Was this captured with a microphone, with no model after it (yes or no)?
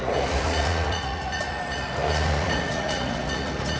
no